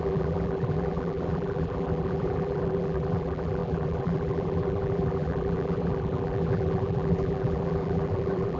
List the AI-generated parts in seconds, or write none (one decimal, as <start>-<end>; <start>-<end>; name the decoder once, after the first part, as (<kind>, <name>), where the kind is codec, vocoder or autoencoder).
0.0-8.6 (vocoder, BigVGAN v2)